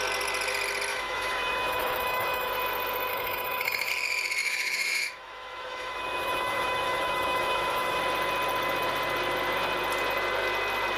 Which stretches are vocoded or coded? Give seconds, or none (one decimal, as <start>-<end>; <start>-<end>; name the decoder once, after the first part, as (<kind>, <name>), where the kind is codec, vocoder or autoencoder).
0.9-2.5 (autoencoder, DAC-VAE); 3.1-3.9; 4.4-8.0